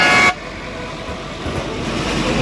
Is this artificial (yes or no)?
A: no